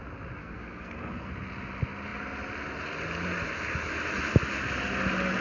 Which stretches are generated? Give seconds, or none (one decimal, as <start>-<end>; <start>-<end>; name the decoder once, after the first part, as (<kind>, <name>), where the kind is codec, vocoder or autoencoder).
0.4-1.3 (codec, SNAC)